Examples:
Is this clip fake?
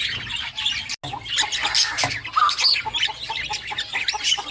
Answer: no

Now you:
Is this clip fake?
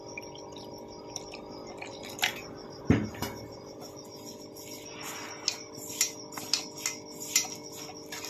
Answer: no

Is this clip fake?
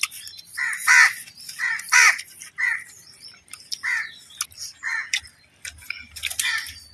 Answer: no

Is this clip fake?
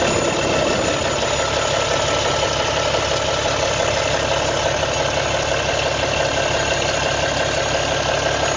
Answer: no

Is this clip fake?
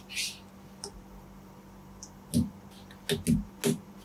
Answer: no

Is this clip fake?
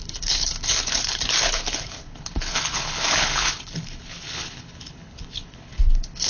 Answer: yes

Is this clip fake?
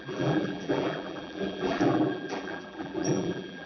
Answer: yes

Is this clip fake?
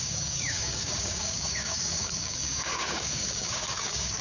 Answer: yes